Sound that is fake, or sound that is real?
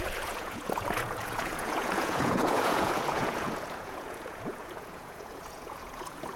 fake